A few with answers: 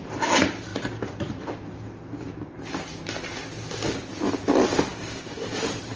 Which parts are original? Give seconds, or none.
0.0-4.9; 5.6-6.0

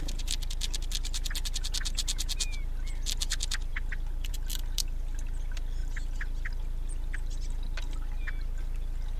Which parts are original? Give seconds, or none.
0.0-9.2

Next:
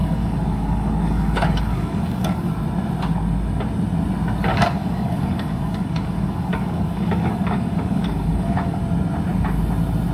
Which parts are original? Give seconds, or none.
2.5-4.5; 8.8-10.1